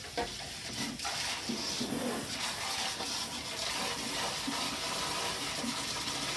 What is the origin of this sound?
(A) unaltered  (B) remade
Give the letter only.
A